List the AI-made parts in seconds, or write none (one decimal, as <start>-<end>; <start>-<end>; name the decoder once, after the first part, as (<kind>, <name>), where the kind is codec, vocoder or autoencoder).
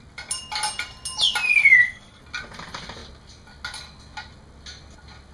1.5-2.2 (codec, SNAC)